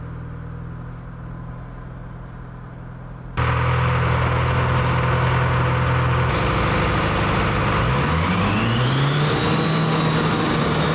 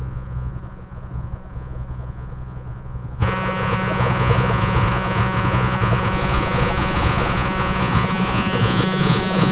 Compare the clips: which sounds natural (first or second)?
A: first